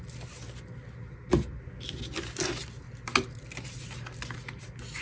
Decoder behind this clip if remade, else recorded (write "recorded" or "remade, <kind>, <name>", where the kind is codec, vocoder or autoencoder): recorded